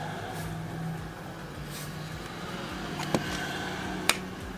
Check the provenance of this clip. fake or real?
real